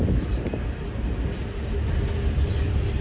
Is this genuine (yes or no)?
yes